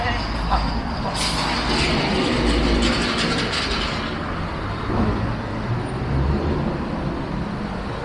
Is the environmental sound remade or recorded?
recorded